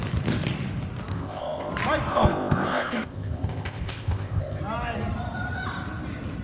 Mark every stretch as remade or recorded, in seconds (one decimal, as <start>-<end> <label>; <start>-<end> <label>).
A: 0.0-1.1 recorded; 1.1-1.7 remade; 1.7-2.1 recorded; 2.1-4.6 remade; 4.6-6.4 recorded